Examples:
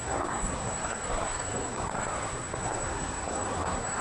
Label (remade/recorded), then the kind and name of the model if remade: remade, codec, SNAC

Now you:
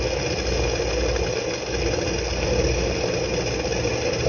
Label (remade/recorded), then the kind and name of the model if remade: recorded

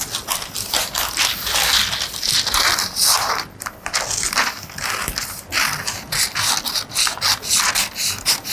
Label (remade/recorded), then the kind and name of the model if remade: recorded